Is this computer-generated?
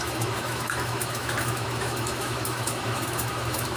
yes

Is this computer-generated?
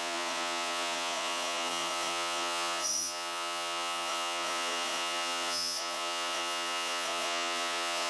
yes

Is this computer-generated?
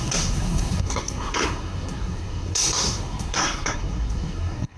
yes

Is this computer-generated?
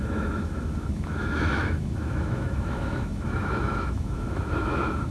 yes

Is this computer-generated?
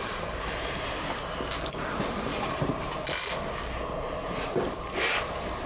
no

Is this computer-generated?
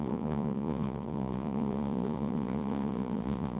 yes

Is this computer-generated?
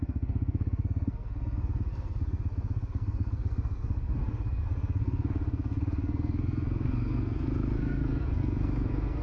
yes